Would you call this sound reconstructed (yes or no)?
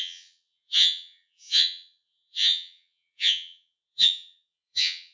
yes